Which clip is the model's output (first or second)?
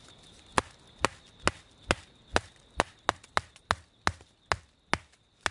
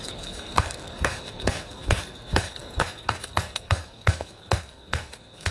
second